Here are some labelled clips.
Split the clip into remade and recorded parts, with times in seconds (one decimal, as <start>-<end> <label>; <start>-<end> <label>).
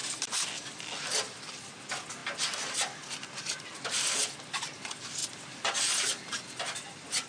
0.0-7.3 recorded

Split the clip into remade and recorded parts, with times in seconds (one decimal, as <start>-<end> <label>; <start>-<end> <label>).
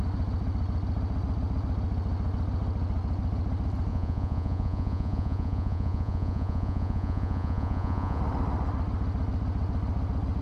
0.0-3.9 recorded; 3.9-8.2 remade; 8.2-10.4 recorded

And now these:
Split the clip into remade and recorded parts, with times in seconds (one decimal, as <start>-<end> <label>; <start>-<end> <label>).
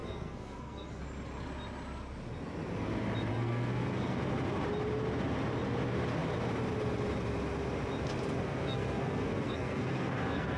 0.0-1.0 remade; 1.0-3.3 recorded; 3.3-4.2 remade; 4.2-8.4 recorded; 8.4-10.6 remade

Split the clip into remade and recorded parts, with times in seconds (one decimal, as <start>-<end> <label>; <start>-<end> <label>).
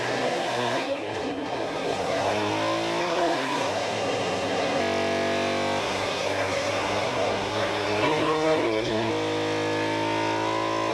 0.0-2.5 remade; 2.5-3.0 recorded; 3.0-4.8 remade; 4.8-5.8 recorded; 5.8-9.1 remade; 9.1-10.9 recorded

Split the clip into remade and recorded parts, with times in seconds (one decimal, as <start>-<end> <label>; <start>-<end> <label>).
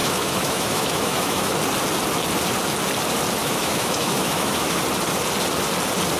0.0-1.5 remade; 1.5-3.4 recorded; 3.4-4.8 remade; 4.8-6.2 recorded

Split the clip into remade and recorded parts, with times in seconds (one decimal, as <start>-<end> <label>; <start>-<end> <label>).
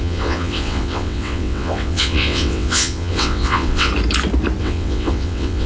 0.0-3.9 remade; 3.9-4.6 recorded; 4.6-5.7 remade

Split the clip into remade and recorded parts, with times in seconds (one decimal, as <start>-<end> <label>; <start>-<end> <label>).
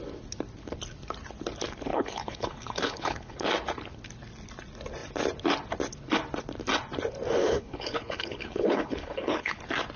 0.0-1.9 recorded; 1.9-3.5 remade; 3.5-7.4 recorded; 7.4-9.6 remade; 9.6-10.0 recorded